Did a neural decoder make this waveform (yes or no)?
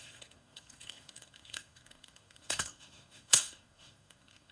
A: yes